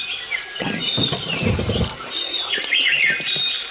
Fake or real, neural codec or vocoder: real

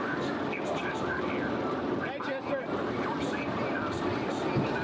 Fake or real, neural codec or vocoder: real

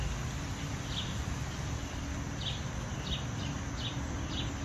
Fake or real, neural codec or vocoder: real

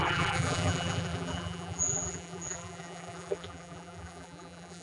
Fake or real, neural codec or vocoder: fake, vocoder, BigVGAN v2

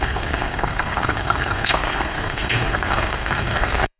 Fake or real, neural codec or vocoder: fake, codec, SNAC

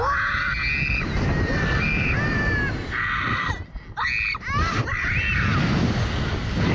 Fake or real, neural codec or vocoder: real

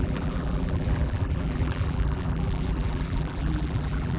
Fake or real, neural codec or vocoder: fake, vocoder, BigVGAN v2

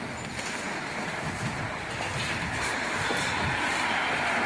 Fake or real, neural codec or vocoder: real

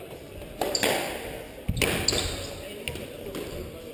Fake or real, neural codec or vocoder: real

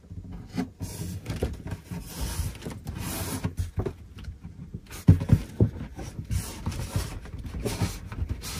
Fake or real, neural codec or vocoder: real